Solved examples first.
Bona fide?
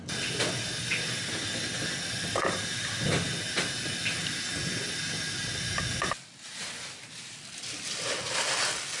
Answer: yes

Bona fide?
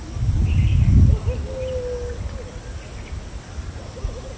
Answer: yes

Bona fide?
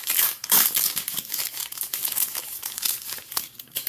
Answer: no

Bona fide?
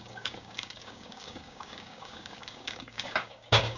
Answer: no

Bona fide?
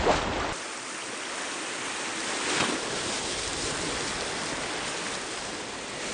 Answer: yes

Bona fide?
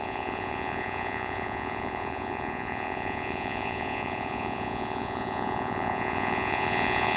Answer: no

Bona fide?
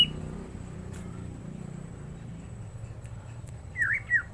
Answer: yes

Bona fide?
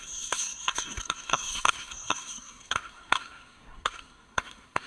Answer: no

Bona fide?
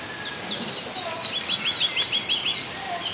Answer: yes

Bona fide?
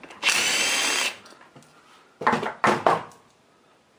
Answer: yes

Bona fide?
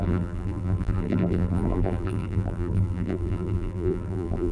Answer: no